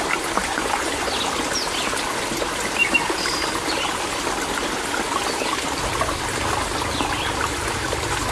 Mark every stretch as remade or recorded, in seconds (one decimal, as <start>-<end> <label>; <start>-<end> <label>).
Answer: 0.0-0.5 recorded; 0.5-1.1 remade; 1.1-8.3 recorded

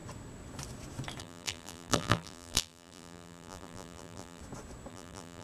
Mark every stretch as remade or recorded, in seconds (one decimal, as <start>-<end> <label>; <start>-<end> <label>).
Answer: 0.0-1.2 recorded; 1.2-4.4 remade; 4.4-4.9 recorded; 4.9-5.4 remade

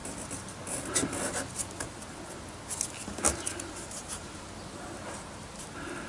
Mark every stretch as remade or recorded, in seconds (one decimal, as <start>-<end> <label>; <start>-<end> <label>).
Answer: 0.0-6.1 recorded

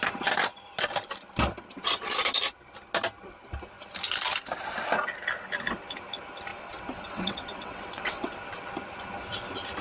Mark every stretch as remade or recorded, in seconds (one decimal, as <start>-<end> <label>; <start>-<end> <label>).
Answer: 0.0-6.5 recorded; 6.5-8.4 remade; 8.4-9.8 recorded

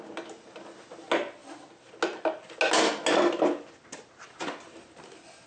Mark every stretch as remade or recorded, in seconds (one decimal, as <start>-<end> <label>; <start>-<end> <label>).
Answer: 0.0-5.5 recorded

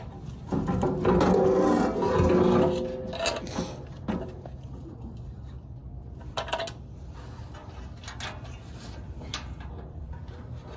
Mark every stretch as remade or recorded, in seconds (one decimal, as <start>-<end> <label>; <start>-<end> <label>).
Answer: 0.0-10.8 recorded